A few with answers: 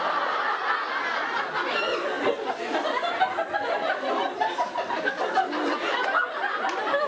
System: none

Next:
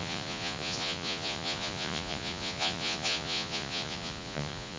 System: vocoder, Vocos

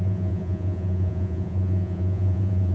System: vocoder, Vocos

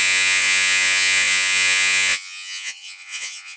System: vocoder, Vocos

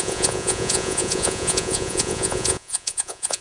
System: vocoder, Vocos